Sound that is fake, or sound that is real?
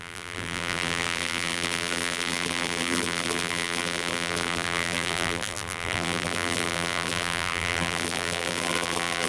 fake